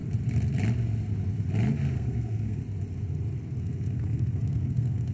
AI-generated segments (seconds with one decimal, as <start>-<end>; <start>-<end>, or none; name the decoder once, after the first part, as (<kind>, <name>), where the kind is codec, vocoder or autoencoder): 1.9-2.6 (codec, SNAC); 3.6-5.1